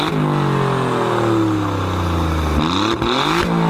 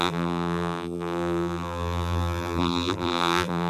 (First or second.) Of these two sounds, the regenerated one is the second